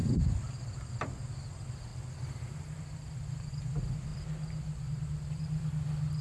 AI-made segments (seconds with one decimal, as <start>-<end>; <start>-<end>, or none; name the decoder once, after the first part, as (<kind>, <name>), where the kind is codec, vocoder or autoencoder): 0.0-1.2 (vocoder, BigVGAN v2); 1.9-3.6